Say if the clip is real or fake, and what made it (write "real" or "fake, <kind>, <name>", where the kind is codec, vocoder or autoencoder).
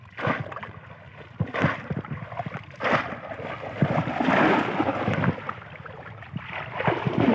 real